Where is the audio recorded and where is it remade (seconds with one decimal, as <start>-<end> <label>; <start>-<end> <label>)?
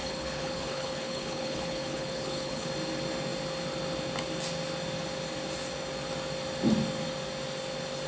0.0-2.7 remade; 2.7-8.1 recorded